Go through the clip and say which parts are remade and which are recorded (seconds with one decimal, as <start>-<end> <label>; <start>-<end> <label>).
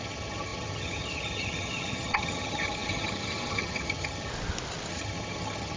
0.0-4.3 remade; 4.3-4.9 recorded; 4.9-5.8 remade